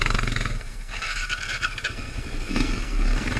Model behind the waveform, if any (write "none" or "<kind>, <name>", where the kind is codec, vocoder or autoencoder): codec, SNAC